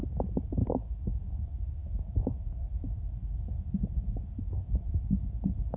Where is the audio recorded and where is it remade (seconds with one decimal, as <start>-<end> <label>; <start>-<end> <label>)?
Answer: 0.0-0.6 recorded; 0.6-1.3 remade; 1.3-5.8 recorded